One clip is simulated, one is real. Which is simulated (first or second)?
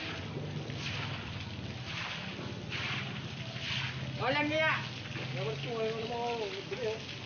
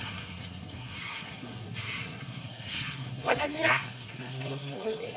second